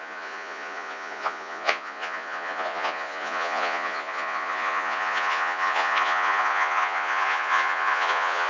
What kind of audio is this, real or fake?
fake